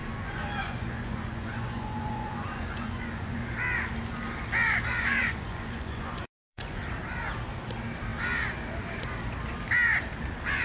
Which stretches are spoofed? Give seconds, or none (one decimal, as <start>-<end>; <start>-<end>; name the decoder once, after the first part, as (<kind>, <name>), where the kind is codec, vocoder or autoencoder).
0.0-3.5 (vocoder, Vocos); 5.2-6.8